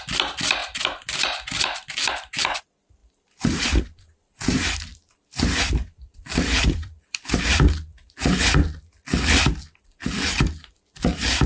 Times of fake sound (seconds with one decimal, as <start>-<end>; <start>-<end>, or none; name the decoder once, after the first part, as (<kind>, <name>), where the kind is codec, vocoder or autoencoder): 0.6-2.4 (vocoder, BigVGAN v2); 3.0-7.4